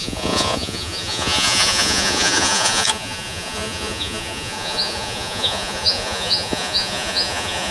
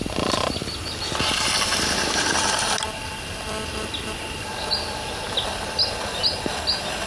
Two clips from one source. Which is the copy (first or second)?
first